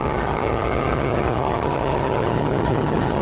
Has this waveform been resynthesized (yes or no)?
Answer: yes